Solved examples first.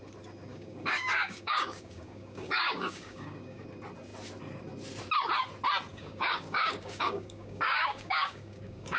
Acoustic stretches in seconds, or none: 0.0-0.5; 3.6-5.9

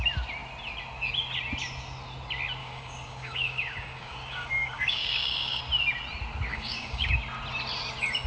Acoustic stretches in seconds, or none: 0.0-2.6; 5.6-6.5; 7.1-8.3